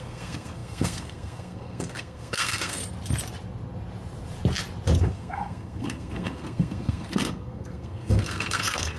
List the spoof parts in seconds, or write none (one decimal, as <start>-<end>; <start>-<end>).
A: 0.0-2.8; 5.0-9.0